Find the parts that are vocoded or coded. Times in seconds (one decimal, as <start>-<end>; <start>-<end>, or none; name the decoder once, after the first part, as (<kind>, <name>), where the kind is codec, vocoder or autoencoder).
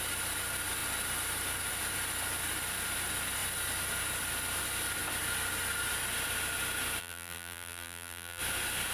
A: 7.0-8.4 (vocoder, BigVGAN v2)